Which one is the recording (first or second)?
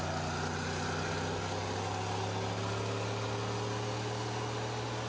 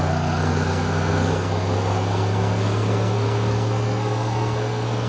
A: first